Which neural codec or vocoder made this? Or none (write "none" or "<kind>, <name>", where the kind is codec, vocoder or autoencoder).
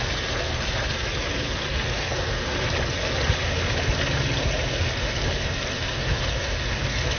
none